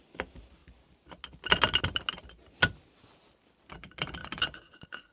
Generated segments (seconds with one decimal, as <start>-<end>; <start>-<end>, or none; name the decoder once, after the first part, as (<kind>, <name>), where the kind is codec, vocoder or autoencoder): 4.2-5.1 (vocoder, Vocos)